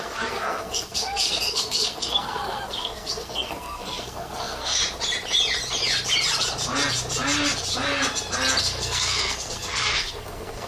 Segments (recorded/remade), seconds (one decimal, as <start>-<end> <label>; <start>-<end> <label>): 0.0-4.8 remade; 4.8-8.6 recorded; 8.6-10.7 remade